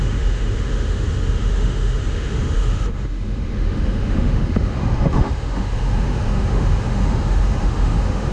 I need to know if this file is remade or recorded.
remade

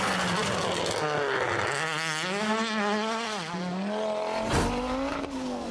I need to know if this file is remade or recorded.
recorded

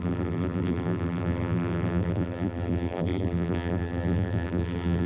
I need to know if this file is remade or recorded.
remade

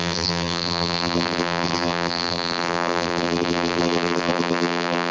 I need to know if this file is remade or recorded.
remade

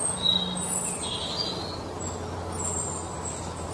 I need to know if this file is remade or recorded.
recorded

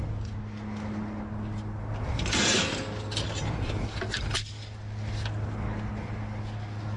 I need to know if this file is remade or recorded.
recorded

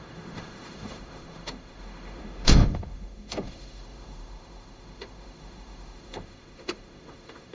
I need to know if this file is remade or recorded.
remade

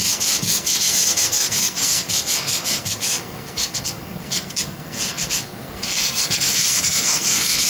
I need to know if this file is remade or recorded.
remade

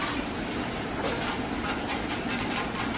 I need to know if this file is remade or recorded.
recorded